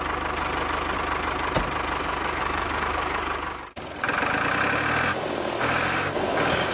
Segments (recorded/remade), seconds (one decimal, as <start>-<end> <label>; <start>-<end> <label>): 0.0-2.0 recorded; 2.0-3.9 remade; 3.9-5.1 recorded; 5.1-6.7 remade